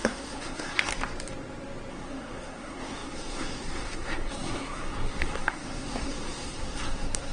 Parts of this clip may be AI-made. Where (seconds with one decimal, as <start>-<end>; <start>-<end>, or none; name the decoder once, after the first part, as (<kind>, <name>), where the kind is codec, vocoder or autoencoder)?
0.0-0.9 (codec, SNAC); 1.9-7.3